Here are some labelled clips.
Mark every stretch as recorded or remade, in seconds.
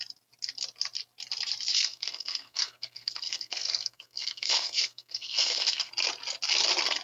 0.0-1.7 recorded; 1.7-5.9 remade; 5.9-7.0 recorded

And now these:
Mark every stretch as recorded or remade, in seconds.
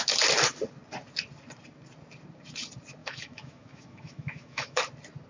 0.0-3.0 recorded; 3.0-4.8 remade; 4.8-5.3 recorded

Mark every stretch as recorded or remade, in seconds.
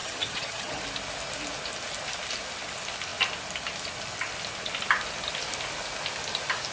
0.0-0.8 remade; 0.8-6.7 recorded